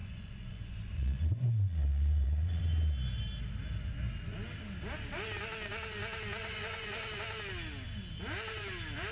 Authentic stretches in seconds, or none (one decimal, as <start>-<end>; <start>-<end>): 2.6-6.4; 7.1-9.1